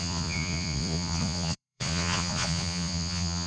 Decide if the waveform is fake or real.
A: fake